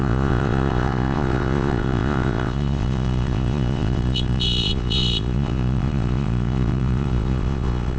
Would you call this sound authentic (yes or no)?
no